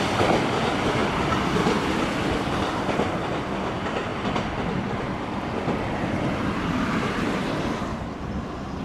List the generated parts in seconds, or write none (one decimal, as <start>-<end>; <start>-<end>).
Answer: none